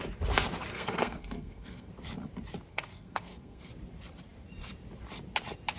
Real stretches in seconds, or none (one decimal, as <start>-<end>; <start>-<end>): 0.0-0.7; 1.9-2.7; 3.7-5.8